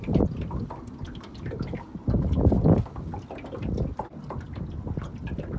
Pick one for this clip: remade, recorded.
recorded